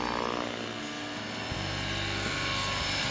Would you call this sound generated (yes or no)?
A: no